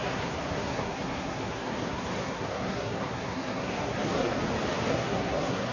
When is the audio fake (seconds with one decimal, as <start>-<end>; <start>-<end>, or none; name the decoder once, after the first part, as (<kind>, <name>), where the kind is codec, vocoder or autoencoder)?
0.0-4.4 (codec, SNAC); 4.9-5.7